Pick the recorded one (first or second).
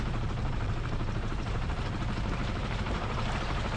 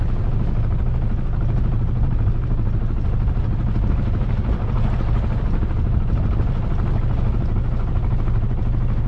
second